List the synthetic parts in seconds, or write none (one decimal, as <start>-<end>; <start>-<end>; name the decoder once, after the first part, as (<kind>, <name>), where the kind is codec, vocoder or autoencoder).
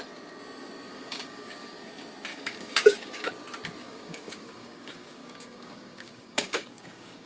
0.9-1.8 (codec, DAC); 2.3-3.3; 3.8-7.3